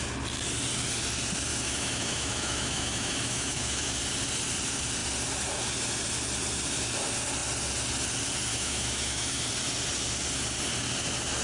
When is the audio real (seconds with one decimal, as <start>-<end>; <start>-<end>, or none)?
0.0-1.5; 4.0-8.5; 9.4-11.4